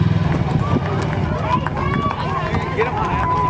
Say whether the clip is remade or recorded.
recorded